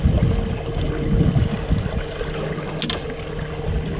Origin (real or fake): real